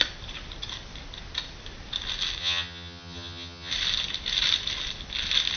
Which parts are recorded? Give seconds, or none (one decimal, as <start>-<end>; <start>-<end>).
0.0-2.4; 3.7-5.6